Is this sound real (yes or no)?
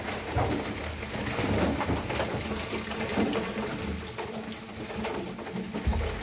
yes